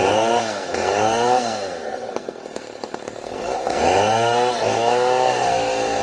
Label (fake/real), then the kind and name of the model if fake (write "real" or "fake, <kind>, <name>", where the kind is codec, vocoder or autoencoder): fake, codec, SNAC